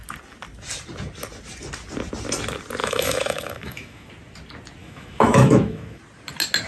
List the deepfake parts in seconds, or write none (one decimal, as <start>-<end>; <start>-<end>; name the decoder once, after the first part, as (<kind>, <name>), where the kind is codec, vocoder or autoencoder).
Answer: 2.8-4.1 (autoencoder, DAC-VAE); 4.8-6.0

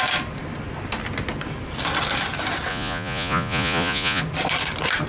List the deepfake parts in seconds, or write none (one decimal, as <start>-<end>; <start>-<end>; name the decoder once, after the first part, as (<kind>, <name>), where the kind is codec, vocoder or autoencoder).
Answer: 2.7-4.2 (vocoder, Vocos)

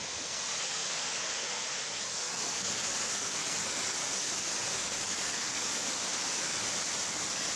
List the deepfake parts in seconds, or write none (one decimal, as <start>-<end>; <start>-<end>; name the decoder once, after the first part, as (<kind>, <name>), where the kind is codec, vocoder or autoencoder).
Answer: 0.0-6.6 (codec, SNAC); 7.1-7.6

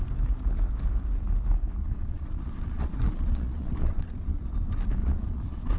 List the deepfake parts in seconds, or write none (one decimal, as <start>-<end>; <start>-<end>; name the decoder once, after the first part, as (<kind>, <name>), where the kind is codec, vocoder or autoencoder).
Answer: 1.8-4.5 (vocoder, Vocos); 5.0-5.8

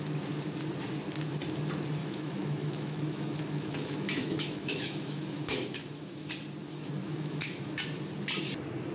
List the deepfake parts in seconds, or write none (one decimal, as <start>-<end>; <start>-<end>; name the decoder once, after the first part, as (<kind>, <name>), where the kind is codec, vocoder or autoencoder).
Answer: 2.0-6.3 (autoencoder, DAC-VAE); 7.0-7.7

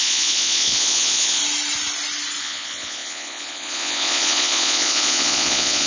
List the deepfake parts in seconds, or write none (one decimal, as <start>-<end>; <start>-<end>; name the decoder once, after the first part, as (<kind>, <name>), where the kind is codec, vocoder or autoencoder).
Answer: 0.0-1.4 (vocoder, Vocos); 2.4-5.9